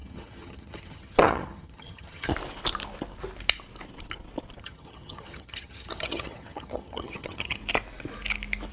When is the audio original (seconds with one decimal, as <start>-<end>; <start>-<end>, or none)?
2.3-4.6; 7.6-8.7